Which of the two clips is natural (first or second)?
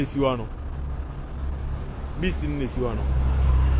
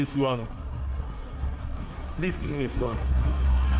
first